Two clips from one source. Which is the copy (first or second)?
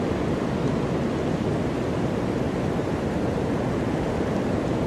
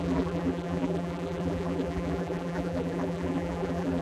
second